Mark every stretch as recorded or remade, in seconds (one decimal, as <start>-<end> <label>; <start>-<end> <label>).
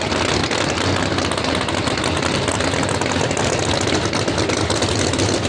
0.0-5.5 recorded